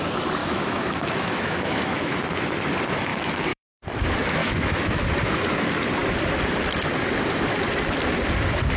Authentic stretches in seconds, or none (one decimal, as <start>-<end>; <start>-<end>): 0.0-0.4; 2.2-3.1; 3.8-4.4; 5.0-8.8